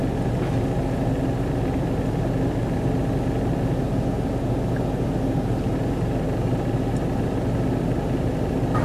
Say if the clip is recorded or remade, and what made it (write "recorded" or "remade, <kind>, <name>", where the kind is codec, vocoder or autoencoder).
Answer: recorded